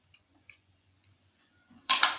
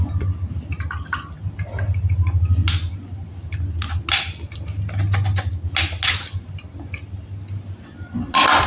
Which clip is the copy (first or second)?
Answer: first